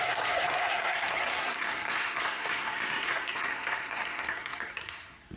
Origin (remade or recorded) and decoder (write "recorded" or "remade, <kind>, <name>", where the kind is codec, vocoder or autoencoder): remade, codec, SNAC